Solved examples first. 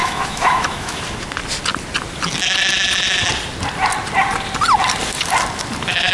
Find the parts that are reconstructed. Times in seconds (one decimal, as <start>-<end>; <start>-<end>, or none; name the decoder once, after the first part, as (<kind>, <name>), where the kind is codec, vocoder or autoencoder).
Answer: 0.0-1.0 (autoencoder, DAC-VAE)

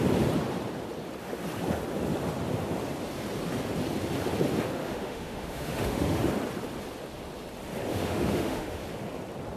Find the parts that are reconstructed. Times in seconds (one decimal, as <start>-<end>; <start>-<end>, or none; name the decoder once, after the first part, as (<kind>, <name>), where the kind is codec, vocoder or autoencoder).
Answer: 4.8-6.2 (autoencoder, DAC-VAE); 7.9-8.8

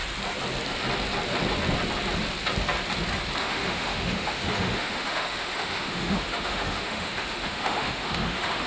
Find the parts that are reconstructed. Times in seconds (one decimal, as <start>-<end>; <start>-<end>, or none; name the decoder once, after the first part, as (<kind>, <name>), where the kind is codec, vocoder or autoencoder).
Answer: 3.4-8.7 (autoencoder, DAC-VAE)

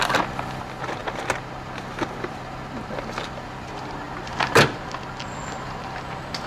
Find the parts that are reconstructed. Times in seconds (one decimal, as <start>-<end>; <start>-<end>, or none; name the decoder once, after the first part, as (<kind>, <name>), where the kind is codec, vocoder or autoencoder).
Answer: none

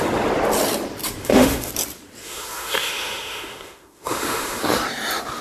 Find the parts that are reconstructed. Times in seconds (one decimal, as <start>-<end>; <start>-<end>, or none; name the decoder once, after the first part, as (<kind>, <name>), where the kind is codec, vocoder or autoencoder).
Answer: 1.2-1.7 (autoencoder, DAC-VAE); 2.2-4.6

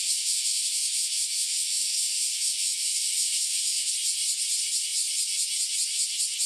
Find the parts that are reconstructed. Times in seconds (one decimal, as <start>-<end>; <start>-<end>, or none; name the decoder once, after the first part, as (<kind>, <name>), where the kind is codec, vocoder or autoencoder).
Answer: 0.0-3.9 (autoencoder, DAC-VAE)

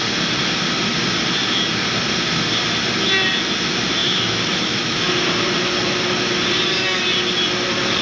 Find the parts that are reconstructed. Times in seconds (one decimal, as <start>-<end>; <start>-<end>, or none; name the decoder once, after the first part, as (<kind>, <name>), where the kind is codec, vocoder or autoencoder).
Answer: 4.0-5.0 (autoencoder, DAC-VAE)

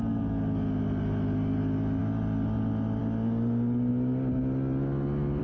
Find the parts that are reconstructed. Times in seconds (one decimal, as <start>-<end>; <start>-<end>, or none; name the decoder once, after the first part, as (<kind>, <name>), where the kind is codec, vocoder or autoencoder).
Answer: none